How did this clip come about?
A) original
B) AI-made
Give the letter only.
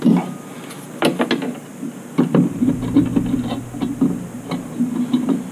A